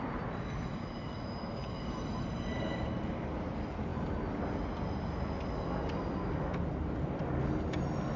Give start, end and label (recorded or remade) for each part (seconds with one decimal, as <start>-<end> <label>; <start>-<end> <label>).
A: 0.0-8.2 recorded